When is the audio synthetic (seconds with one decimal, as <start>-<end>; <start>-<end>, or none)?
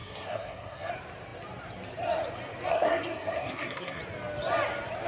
0.0-0.9; 2.7-4.0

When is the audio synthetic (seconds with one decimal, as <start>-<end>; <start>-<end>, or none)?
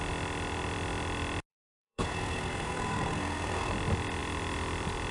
1.5-3.7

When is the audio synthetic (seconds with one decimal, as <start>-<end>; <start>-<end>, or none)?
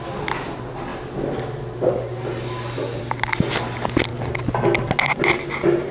none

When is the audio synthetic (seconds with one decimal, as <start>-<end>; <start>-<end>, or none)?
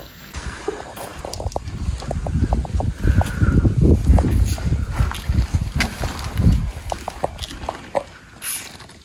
0.0-0.6